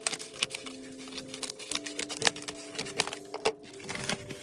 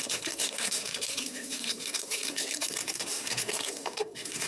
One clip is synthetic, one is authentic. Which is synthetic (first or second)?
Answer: second